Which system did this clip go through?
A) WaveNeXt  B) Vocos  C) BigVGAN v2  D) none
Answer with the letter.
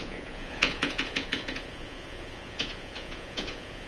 B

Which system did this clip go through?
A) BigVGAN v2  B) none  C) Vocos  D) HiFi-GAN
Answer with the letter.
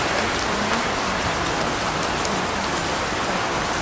B